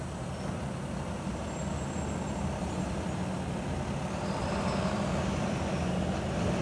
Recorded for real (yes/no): yes